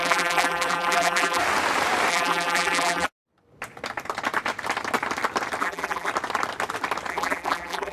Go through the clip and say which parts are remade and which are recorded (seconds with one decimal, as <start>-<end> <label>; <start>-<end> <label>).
0.0-1.4 remade; 1.4-2.1 recorded; 2.1-3.1 remade; 3.1-5.6 recorded; 5.6-6.1 remade; 6.1-7.1 recorded; 7.1-7.9 remade